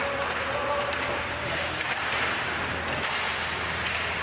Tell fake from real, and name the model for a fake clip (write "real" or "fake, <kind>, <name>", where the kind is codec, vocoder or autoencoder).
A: real